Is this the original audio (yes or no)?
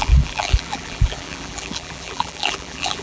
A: no